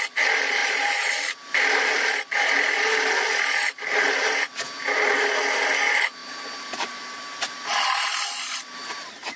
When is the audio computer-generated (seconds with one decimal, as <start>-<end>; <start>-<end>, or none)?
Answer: 0.6-1.1; 6.2-7.0